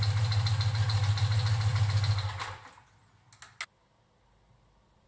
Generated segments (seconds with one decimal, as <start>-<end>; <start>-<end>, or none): none